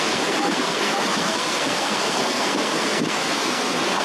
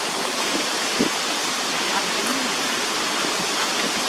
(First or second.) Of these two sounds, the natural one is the second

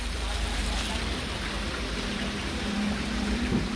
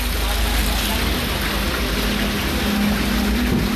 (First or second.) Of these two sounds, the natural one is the second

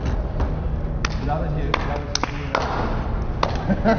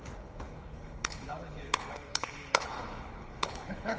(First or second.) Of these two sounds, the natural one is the first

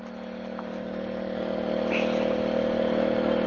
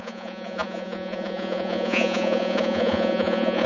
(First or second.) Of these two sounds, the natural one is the first